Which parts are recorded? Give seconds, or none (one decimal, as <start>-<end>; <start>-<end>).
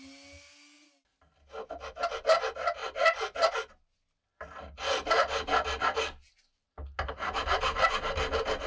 0.0-8.7